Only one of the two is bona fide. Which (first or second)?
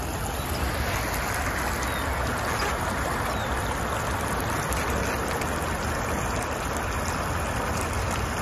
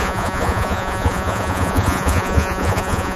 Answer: first